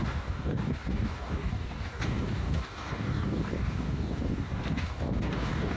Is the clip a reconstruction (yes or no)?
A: yes